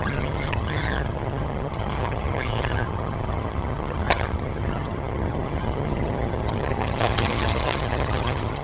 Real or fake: fake